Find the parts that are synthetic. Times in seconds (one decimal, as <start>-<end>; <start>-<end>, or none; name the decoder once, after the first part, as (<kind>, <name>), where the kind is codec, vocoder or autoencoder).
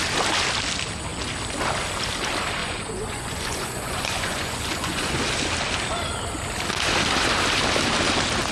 2.6-5.2 (vocoder, Vocos)